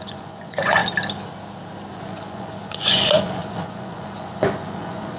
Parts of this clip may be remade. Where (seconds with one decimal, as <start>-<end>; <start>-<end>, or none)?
0.0-0.8; 1.9-5.2